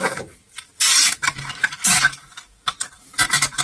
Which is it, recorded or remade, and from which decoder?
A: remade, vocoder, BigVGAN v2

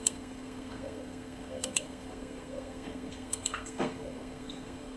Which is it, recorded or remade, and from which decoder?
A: remade, codec, SNAC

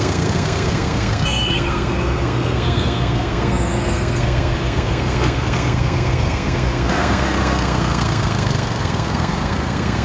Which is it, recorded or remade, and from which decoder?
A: remade, codec, SNAC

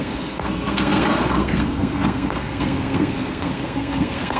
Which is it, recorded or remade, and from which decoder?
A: remade, codec, SNAC